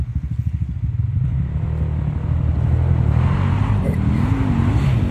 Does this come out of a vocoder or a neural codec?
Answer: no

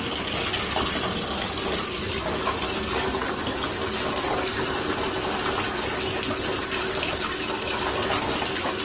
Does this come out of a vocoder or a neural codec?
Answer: no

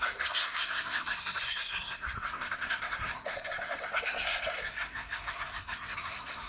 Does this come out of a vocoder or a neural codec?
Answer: yes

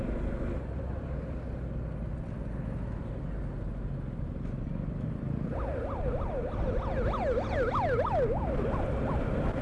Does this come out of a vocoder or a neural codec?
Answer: no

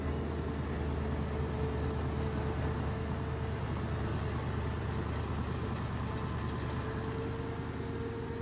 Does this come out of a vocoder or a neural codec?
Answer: no